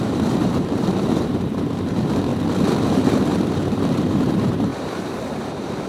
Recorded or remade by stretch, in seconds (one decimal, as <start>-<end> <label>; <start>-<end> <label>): 0.0-2.3 remade; 2.3-2.9 recorded; 2.9-5.9 remade